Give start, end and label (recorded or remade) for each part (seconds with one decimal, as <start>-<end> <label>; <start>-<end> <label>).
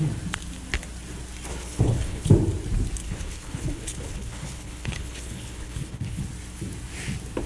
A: 0.0-1.5 recorded; 1.5-2.3 remade; 2.3-3.0 recorded; 3.0-6.2 remade; 6.2-7.5 recorded